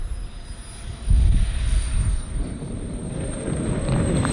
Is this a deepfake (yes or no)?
no